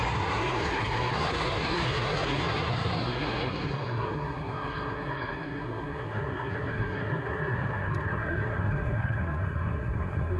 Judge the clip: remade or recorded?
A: remade